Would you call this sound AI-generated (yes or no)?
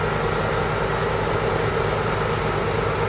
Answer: no